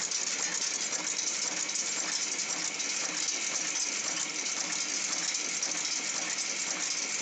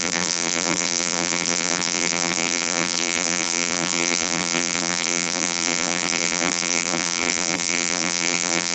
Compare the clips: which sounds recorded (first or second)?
first